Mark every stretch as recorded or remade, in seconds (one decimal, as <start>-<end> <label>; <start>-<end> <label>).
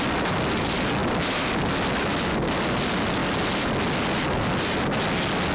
0.0-5.5 recorded